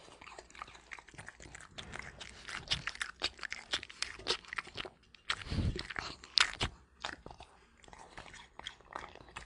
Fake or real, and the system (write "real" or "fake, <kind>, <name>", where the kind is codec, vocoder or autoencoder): real